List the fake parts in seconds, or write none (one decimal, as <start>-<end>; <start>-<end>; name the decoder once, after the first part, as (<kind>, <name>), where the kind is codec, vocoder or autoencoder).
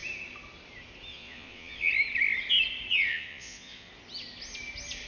1.1-1.9 (vocoder, Vocos); 3.1-3.9